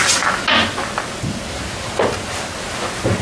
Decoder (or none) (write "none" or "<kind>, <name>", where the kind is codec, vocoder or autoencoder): none